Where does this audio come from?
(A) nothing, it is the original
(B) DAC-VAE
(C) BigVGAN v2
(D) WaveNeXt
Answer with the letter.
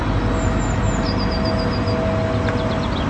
A